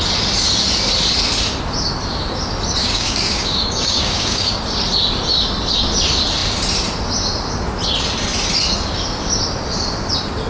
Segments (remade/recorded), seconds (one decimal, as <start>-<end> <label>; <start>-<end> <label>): 0.0-2.8 recorded; 2.8-4.6 remade; 4.6-10.5 recorded